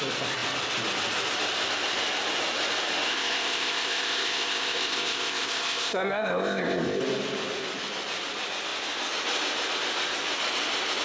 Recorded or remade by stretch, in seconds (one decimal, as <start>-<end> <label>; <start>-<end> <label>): 0.0-3.1 recorded; 3.1-7.0 remade; 7.0-11.0 recorded